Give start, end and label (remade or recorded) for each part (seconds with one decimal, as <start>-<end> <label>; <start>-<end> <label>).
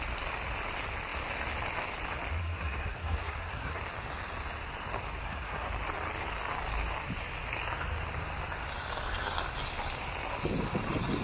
0.0-2.4 recorded; 2.4-3.8 remade; 3.8-5.2 recorded; 5.2-5.7 remade; 5.7-11.2 recorded